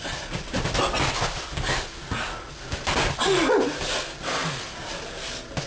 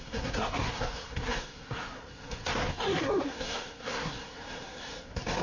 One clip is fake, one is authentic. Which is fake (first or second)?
second